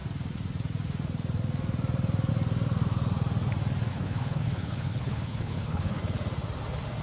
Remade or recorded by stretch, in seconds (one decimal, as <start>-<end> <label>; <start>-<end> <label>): 0.0-3.9 recorded; 3.9-6.0 remade; 6.0-7.0 recorded